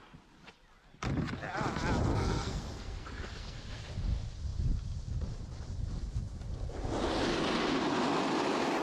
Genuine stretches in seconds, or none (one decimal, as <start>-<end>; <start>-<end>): 0.0-2.1; 3.9-8.8